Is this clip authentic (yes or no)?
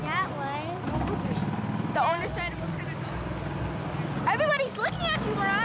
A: yes